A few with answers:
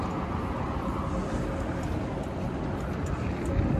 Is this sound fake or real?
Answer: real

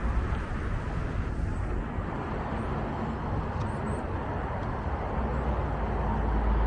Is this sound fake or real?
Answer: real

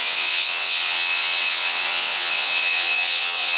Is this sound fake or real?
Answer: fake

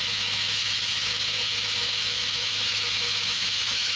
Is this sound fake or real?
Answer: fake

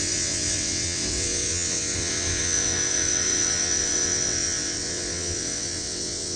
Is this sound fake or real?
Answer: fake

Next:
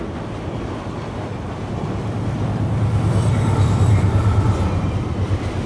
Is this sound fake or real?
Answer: real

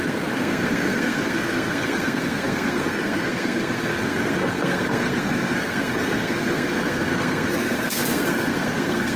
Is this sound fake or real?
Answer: fake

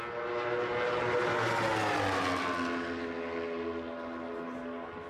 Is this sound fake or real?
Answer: real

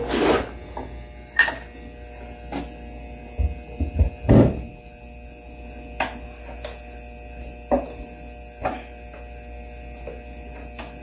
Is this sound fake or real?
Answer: real